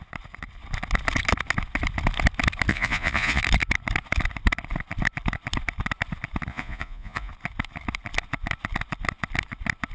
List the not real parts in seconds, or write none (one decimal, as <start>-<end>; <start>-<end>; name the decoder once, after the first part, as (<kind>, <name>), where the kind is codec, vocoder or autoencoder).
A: 2.7-3.4 (vocoder, Vocos); 6.5-7.3